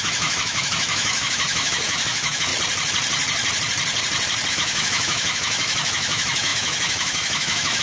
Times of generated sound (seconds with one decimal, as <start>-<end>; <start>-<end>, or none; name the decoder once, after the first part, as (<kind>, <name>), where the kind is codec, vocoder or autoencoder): 0.0-2.5 (autoencoder, DAC-VAE); 4.5-7.8